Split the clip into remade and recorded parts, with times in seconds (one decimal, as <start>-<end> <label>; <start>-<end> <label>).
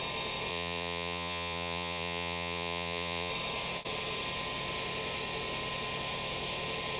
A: 0.0-0.5 recorded; 0.5-3.3 remade; 3.3-7.0 recorded